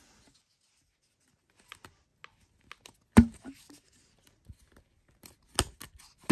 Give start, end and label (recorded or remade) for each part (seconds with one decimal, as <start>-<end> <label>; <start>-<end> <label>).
0.0-6.3 recorded